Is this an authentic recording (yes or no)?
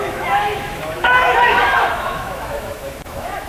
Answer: no